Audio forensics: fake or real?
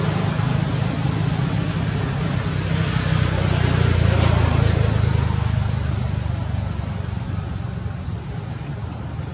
real